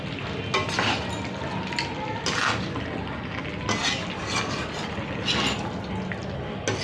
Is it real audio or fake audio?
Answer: real